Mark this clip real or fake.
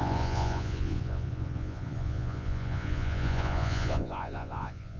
fake